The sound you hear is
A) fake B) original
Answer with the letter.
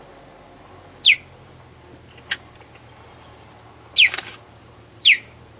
B